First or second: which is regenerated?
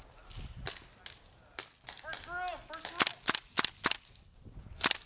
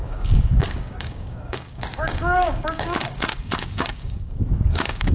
second